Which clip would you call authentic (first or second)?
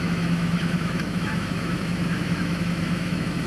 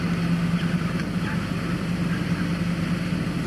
second